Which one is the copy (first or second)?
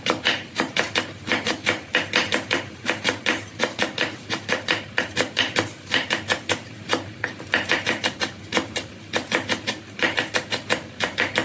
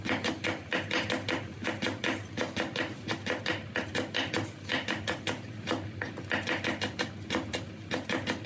first